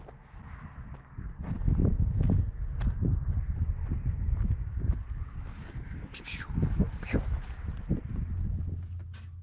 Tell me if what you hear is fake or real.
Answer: real